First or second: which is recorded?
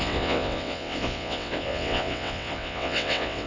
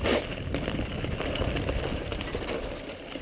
second